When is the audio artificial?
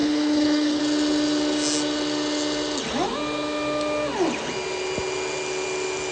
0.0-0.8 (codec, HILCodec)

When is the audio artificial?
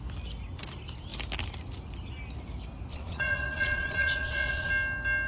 2.9-4.7 (vocoder, Vocos)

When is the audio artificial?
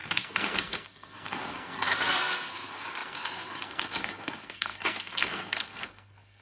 0.0-6.4 (codec, SNAC)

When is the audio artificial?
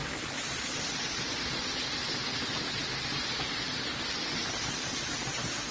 0.0-1.3 (vocoder, BigVGAN v2); 2.8-5.1